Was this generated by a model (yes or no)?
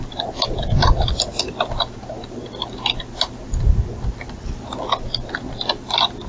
no